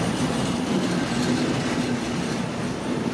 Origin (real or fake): real